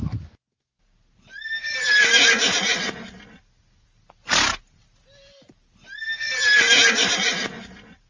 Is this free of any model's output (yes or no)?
yes